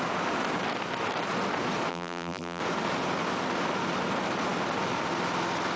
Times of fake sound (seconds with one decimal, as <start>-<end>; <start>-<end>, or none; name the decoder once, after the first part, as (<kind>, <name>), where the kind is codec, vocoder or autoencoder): 1.9-2.6 (vocoder, BigVGAN v2)